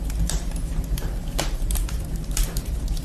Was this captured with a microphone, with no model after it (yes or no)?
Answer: no